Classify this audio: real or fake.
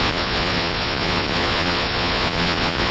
fake